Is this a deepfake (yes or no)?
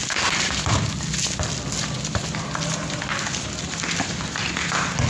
no